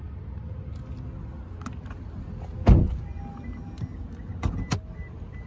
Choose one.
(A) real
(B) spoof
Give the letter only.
A